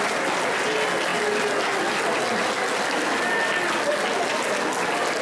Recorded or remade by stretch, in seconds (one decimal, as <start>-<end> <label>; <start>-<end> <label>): 0.0-5.2 recorded